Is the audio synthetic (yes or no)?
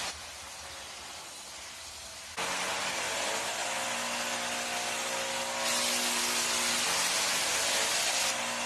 no